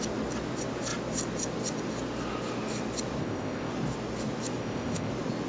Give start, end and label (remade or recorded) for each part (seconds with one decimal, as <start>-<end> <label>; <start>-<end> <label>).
0.0-3.2 recorded; 3.2-3.7 remade; 3.7-4.6 recorded; 4.6-5.1 remade; 5.1-5.5 recorded